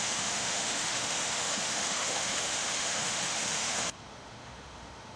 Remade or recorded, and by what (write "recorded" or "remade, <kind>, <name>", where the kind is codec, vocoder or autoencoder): remade, autoencoder, DAC-VAE